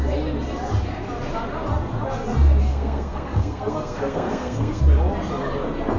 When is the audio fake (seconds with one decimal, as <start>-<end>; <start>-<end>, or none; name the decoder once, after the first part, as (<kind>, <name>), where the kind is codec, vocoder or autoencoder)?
2.7-4.8 (codec, SNAC)